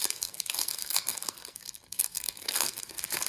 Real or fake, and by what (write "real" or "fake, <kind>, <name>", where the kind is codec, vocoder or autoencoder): fake, codec, SNAC